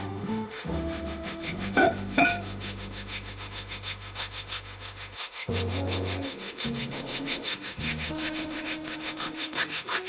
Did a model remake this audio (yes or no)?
yes